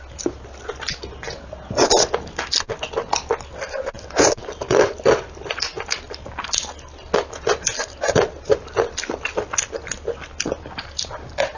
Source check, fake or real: real